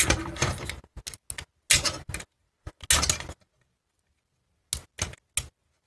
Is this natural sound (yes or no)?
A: yes